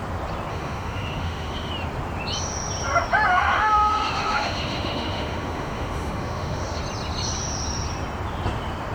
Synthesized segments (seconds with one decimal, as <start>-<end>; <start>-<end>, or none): 0.5-1.7; 3.3-6.8